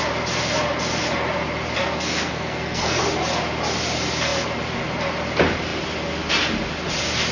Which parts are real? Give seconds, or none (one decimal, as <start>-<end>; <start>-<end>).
0.0-1.8; 3.0-7.3